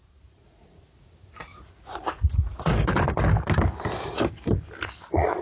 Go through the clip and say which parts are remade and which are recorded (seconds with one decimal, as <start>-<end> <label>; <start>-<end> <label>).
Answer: 0.0-2.7 remade; 2.7-5.0 recorded; 5.0-5.4 remade